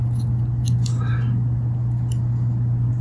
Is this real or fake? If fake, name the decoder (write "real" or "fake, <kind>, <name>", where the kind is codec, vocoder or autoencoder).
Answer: real